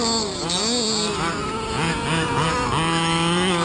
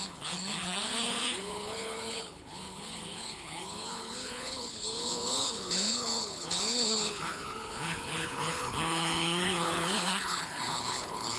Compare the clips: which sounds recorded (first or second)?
first